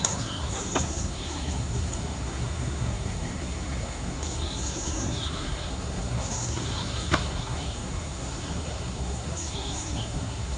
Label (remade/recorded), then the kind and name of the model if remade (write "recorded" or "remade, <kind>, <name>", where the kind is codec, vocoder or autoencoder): remade, codec, SNAC